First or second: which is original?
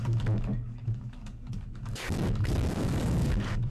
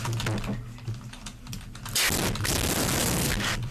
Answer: second